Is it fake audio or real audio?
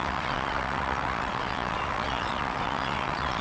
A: fake